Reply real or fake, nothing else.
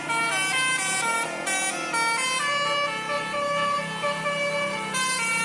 real